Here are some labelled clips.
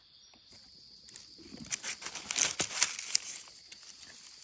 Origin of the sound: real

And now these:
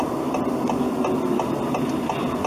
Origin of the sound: real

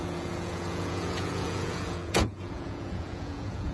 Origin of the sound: fake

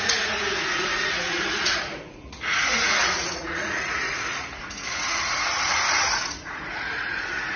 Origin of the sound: fake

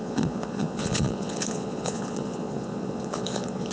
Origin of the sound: fake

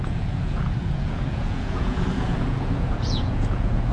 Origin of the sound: fake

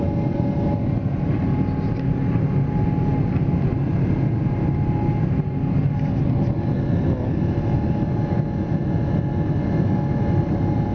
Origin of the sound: real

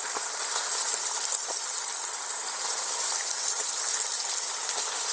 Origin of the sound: real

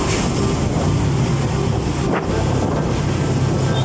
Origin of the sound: real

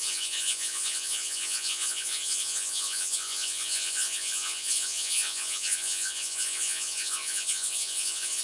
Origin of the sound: fake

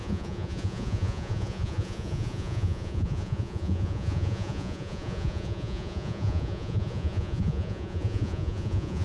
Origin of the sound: fake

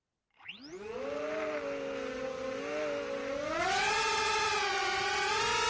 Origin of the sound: real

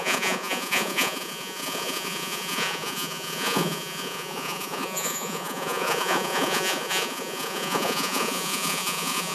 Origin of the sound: fake